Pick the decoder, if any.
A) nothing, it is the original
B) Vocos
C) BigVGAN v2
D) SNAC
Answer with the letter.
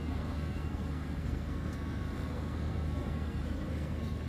D